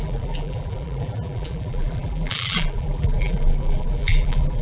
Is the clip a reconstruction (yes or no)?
yes